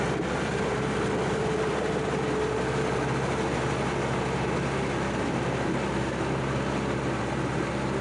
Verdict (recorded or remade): recorded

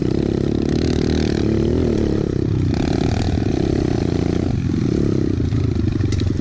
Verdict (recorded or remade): recorded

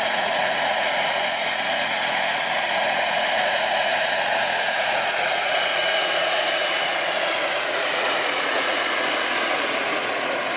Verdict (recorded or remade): remade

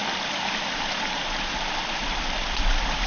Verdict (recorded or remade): recorded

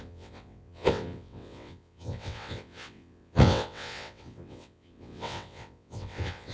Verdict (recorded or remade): remade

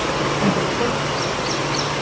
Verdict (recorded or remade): recorded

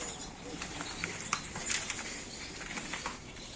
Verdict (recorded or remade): recorded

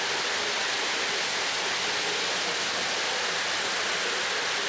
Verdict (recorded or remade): recorded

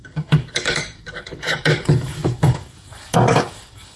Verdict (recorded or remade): remade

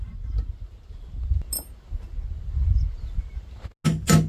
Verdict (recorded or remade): recorded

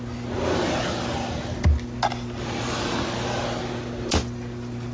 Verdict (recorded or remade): recorded